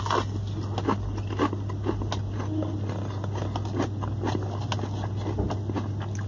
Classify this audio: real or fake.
real